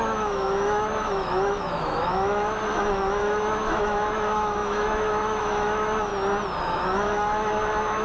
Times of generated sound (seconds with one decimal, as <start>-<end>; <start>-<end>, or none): 0.0-6.1; 6.6-8.0